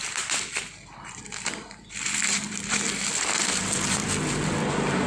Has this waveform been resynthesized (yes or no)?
yes